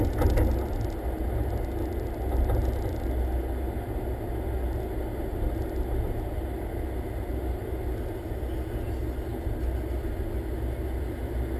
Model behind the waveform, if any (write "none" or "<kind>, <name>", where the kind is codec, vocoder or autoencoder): none